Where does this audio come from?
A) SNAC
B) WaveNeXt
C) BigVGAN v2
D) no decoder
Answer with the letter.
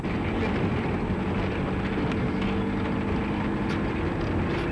D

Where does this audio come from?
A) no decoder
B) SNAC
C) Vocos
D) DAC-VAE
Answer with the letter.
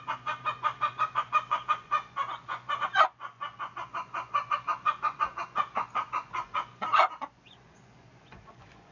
C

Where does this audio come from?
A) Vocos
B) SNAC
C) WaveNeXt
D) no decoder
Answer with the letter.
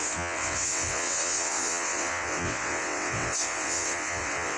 C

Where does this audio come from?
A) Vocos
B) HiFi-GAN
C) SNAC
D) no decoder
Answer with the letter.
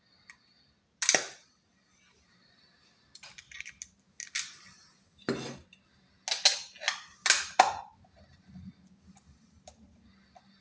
D